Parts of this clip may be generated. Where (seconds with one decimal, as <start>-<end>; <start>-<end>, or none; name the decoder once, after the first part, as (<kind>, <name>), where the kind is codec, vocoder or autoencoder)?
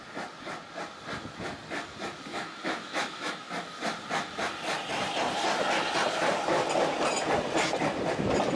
2.3-3.5 (autoencoder, DAC-VAE)